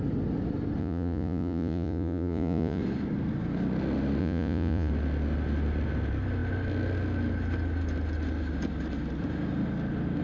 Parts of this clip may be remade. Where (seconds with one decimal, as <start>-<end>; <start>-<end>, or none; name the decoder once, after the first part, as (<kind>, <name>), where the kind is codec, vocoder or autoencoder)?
0.8-2.8 (vocoder, Vocos); 4.2-4.9

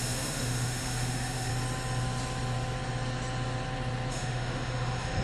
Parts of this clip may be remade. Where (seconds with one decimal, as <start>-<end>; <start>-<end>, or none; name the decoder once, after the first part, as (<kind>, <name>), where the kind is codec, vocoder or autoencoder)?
0.0-1.5 (autoencoder, DAC-VAE); 4.1-5.2

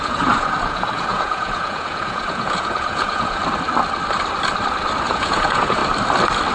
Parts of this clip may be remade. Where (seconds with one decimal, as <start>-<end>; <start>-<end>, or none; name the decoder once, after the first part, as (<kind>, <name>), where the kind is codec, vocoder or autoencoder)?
0.0-3.4 (vocoder, Vocos); 5.1-5.8